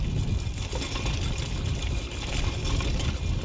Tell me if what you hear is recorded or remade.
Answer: recorded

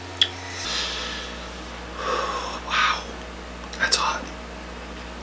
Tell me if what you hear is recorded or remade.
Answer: recorded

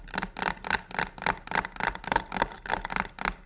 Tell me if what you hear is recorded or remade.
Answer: recorded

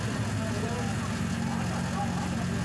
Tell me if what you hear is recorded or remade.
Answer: recorded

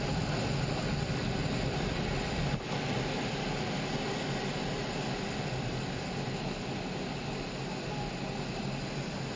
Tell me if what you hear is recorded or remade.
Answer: recorded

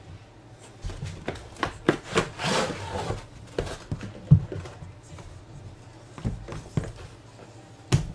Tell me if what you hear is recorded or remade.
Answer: recorded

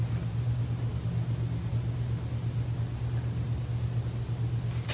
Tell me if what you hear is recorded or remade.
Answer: recorded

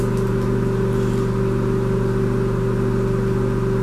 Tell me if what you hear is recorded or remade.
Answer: recorded